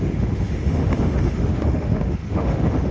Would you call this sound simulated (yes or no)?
yes